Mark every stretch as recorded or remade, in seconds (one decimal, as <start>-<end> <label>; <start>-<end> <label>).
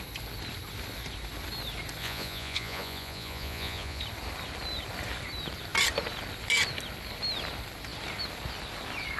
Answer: 0.0-2.0 recorded; 2.0-4.0 remade; 4.0-9.2 recorded